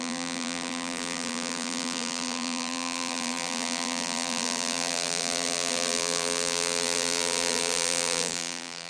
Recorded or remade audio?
remade